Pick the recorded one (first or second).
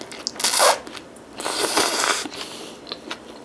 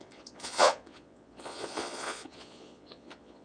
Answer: first